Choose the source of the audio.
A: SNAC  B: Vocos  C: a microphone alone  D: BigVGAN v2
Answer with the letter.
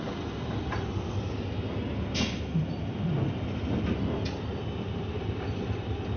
C